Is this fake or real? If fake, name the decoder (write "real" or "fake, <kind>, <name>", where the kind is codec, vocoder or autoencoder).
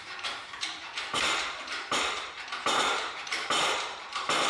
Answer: fake, vocoder, BigVGAN v2